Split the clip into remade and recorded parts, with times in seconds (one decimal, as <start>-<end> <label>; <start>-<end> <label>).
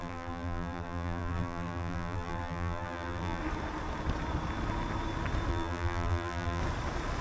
0.0-3.4 remade; 3.4-5.5 recorded; 5.5-6.6 remade; 6.6-7.2 recorded